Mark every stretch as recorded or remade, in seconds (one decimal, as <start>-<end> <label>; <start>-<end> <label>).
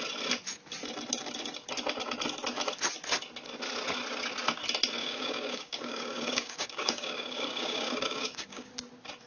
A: 0.0-5.0 recorded; 5.0-8.7 remade; 8.7-9.3 recorded